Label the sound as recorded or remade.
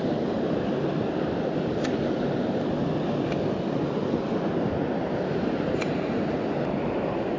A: recorded